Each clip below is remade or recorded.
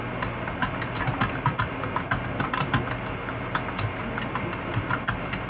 recorded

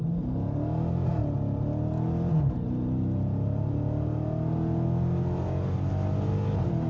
recorded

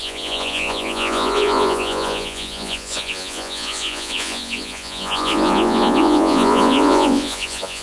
remade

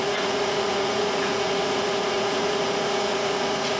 remade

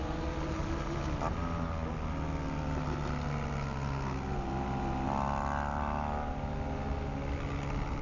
recorded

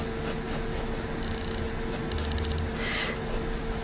recorded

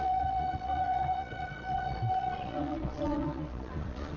remade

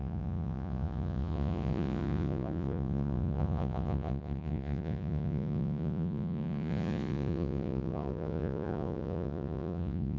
remade